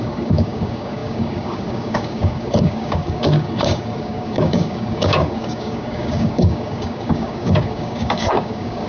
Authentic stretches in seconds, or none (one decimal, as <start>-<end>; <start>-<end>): none